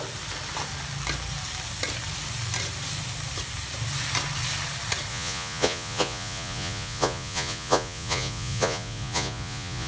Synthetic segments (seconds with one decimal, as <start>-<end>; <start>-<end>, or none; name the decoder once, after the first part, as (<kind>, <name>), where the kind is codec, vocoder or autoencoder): 5.1-9.9 (vocoder, Vocos)